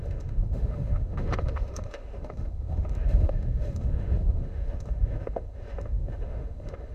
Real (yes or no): no